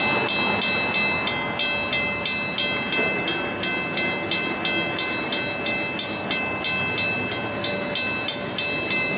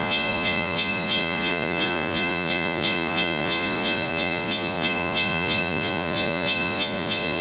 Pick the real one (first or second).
first